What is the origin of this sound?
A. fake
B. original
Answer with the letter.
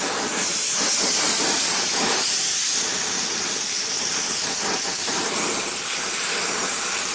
A